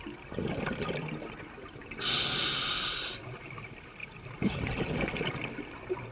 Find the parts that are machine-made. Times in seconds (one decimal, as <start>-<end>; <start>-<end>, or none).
4.0-5.6